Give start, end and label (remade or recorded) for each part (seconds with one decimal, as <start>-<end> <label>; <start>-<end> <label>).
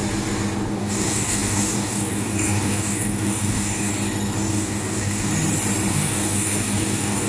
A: 0.0-0.7 recorded; 0.7-3.9 remade; 3.9-4.5 recorded; 4.5-5.3 remade; 5.3-5.9 recorded; 5.9-7.3 remade